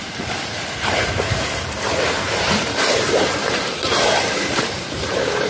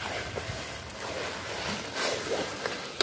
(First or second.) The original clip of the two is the second